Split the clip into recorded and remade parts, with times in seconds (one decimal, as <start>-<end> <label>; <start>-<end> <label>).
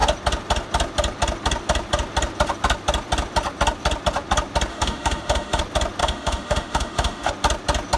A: 0.0-4.7 recorded; 4.7-5.6 remade; 5.6-6.0 recorded; 6.0-7.3 remade; 7.3-8.0 recorded